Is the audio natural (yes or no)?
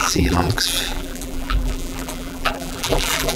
no